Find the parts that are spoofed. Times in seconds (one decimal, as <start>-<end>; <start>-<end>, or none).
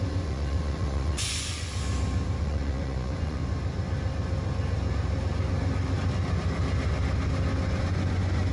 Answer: 0.0-1.7; 2.4-3.4; 7.8-8.5